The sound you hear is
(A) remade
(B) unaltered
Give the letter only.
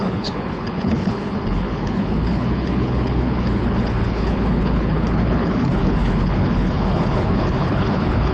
A